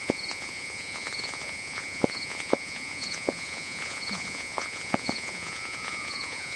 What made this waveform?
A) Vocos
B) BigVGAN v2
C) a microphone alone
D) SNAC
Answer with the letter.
A